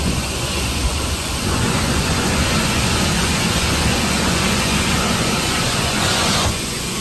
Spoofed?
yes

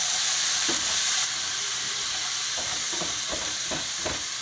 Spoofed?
yes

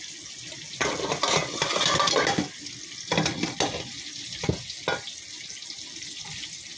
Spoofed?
no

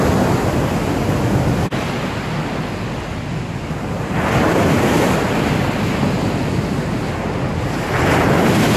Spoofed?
no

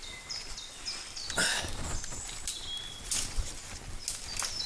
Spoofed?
no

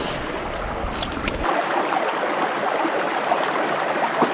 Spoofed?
no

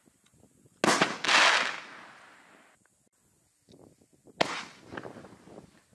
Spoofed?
no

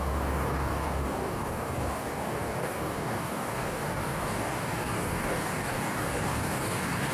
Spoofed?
yes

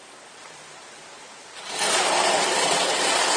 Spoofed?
yes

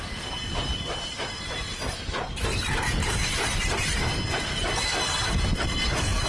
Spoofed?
no